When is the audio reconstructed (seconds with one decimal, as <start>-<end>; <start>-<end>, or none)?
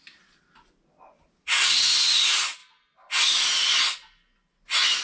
none